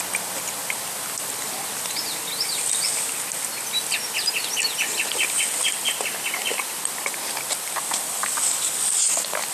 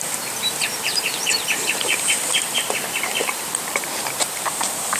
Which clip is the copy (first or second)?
second